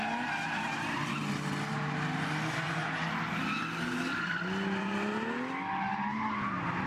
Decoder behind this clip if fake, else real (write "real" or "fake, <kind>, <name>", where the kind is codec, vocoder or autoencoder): real